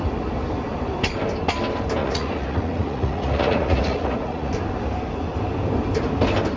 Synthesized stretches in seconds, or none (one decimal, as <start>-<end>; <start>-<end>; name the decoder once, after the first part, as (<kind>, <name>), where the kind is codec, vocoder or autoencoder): 2.0-4.5 (vocoder, Vocos)